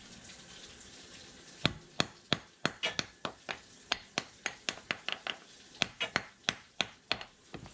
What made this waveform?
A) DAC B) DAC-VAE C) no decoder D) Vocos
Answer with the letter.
C